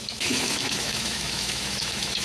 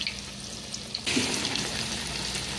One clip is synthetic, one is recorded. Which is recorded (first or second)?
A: second